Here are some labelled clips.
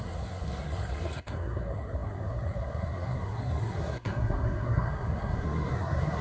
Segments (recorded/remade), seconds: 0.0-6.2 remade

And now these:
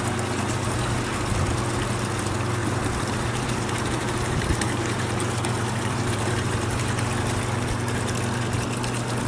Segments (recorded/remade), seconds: 0.0-2.6 recorded; 2.6-7.4 remade; 7.4-9.3 recorded

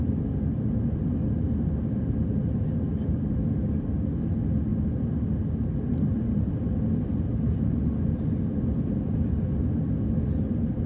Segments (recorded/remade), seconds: 0.0-10.9 recorded

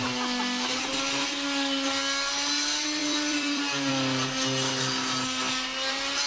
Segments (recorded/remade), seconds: 0.0-3.0 recorded; 3.0-3.9 remade; 3.9-6.3 recorded

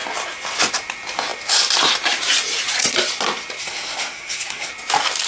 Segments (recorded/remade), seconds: 0.0-3.6 recorded; 3.6-4.7 remade; 4.7-5.3 recorded

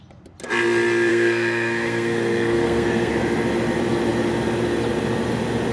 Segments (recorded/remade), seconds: 0.0-1.1 recorded; 1.1-3.1 remade; 3.1-5.7 recorded

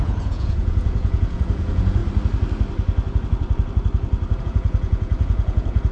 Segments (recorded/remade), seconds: 0.0-2.0 remade; 2.0-4.4 recorded; 4.4-5.9 remade